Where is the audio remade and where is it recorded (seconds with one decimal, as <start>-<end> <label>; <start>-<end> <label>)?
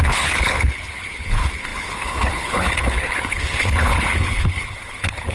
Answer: 0.0-5.3 remade